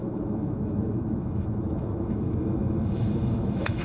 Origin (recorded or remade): remade